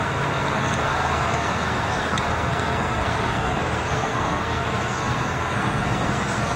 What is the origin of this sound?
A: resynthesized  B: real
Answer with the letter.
A